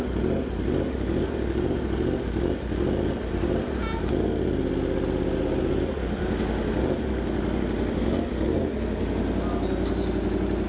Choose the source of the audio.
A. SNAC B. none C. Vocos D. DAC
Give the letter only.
B